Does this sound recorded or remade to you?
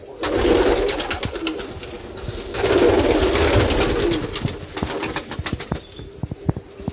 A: recorded